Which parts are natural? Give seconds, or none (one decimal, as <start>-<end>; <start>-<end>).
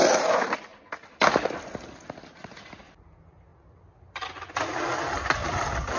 0.0-5.4